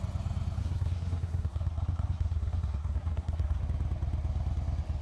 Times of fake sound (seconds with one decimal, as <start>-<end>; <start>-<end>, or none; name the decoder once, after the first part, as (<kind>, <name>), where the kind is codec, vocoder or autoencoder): 0.6-3.6 (codec, SNAC)

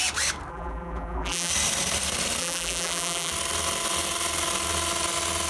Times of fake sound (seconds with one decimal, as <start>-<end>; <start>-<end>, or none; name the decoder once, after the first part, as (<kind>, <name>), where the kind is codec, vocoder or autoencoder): 0.5-1.5 (vocoder, BigVGAN v2); 2.4-3.3

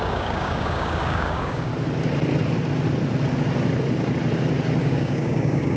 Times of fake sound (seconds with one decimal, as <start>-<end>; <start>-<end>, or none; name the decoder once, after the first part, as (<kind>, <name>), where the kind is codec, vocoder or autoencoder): 0.0-1.7 (codec, DAC); 4.8-5.8

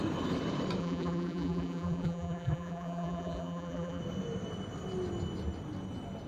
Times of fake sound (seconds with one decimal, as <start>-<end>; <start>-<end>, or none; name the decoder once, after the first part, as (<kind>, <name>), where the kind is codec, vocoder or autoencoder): 0.8-4.0 (vocoder, BigVGAN v2)

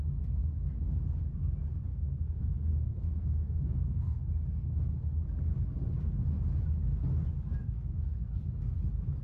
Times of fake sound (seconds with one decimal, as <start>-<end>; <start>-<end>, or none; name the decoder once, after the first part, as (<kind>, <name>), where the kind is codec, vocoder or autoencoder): 1.9-4.2 (codec, SNAC); 7.6-8.4